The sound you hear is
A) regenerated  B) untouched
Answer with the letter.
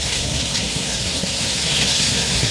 A